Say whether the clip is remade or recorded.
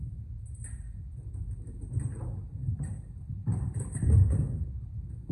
recorded